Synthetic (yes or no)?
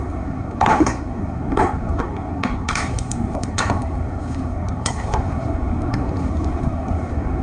yes